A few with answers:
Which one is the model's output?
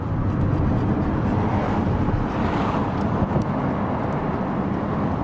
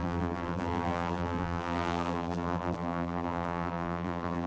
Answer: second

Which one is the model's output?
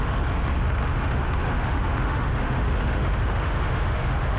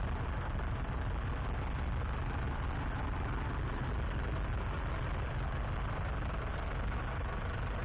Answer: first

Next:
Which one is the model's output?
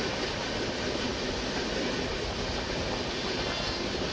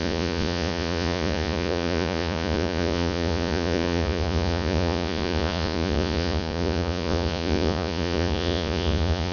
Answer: second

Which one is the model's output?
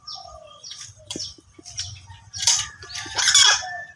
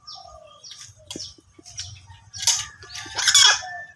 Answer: first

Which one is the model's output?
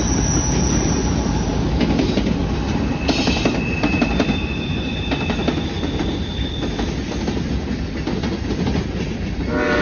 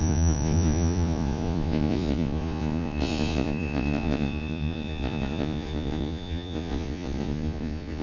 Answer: second